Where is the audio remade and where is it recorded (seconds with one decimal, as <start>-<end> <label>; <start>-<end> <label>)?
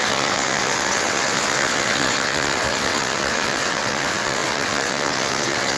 0.0-5.8 remade